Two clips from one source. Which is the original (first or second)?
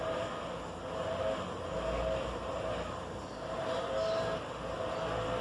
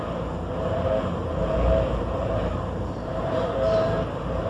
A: first